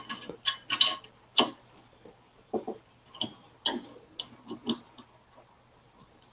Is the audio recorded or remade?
recorded